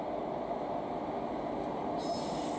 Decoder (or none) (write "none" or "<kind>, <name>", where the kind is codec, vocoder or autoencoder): none